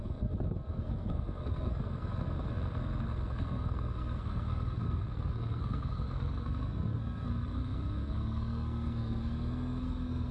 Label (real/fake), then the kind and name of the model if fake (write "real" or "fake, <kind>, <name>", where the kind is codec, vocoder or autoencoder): fake, codec, SNAC